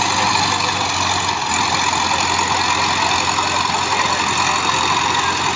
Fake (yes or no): no